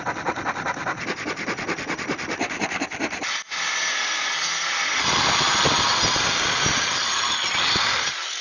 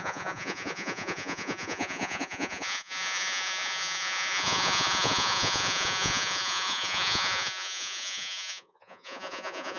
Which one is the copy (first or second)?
second